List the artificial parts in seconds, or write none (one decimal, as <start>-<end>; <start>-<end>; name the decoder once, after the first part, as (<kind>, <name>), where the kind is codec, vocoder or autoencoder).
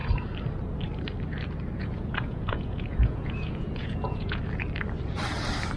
1.8-4.4 (vocoder, Vocos)